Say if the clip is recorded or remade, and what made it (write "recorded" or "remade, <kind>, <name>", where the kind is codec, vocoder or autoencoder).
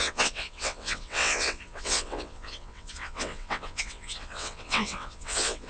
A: remade, vocoder, WaveNeXt